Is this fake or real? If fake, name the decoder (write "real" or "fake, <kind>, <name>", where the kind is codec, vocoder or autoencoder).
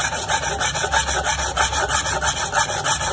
real